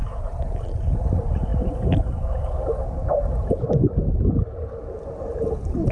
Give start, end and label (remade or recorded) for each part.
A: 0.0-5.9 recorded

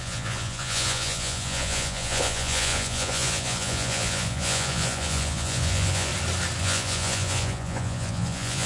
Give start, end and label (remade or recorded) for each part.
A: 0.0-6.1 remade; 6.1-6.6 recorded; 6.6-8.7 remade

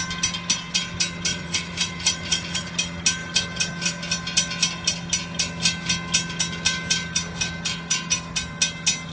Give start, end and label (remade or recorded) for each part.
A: 0.0-1.3 recorded; 1.3-2.7 remade; 2.7-9.1 recorded

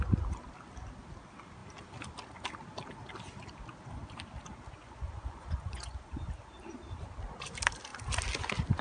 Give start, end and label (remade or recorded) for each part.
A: 0.0-4.8 recorded; 4.8-6.3 remade; 6.3-8.8 recorded

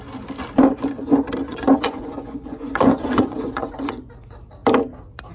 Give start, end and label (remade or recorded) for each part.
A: 0.0-1.5 recorded; 1.5-4.1 remade; 4.1-5.3 recorded

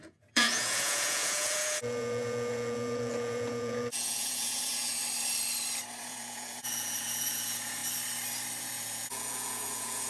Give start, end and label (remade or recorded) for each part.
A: 0.0-5.0 remade; 5.0-6.0 recorded; 6.0-7.8 remade; 7.8-8.6 recorded; 8.6-10.1 remade